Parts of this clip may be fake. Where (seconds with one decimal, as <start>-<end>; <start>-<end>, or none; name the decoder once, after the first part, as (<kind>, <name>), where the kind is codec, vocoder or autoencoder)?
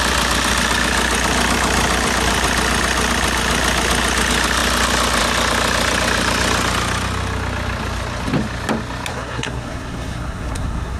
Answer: 9.1-11.0 (codec, SNAC)